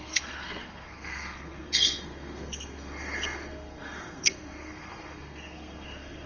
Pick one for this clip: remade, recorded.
remade